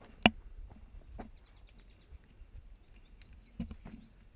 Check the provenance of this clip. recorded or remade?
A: recorded